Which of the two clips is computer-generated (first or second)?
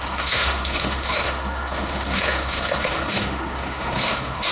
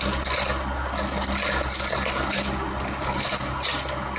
first